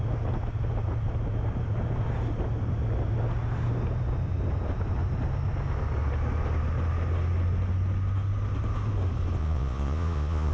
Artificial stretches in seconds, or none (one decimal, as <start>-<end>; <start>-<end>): 9.4-10.5